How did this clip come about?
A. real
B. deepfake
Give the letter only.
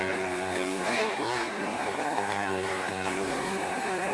B